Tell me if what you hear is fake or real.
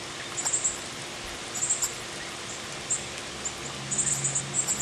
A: real